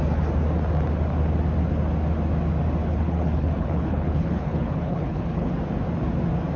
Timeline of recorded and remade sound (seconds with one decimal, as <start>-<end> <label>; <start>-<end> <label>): 0.0-2.9 recorded; 2.9-5.5 remade; 5.5-6.6 recorded